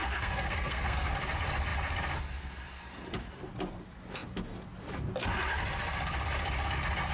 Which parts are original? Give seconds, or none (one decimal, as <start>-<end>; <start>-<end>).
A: 1.1-7.1